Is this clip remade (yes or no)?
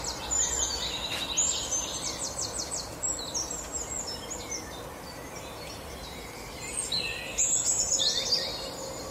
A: no